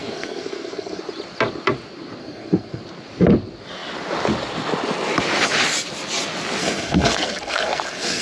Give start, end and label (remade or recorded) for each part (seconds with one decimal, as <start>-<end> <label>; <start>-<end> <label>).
0.0-1.0 remade; 1.0-2.2 recorded; 2.2-2.8 remade; 2.8-6.6 recorded; 6.6-8.2 remade